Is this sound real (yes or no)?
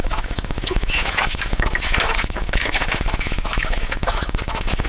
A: no